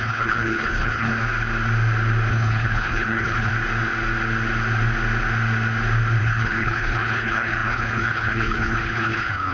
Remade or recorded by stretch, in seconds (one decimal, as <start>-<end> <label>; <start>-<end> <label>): 0.0-1.1 remade; 1.1-2.3 recorded; 2.3-3.5 remade; 3.5-6.2 recorded; 6.2-9.5 remade